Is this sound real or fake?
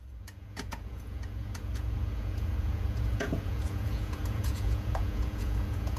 fake